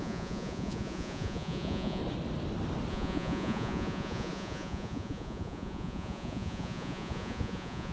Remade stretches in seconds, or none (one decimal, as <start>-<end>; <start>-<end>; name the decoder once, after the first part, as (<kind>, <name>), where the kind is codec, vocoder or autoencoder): 0.0-2.0 (vocoder, Vocos); 2.9-7.9